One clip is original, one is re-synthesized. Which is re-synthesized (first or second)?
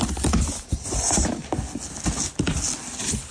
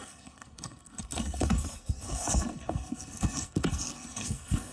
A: second